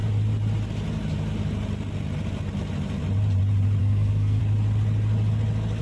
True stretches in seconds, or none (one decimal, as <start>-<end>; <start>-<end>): 0.0-3.8; 4.4-5.8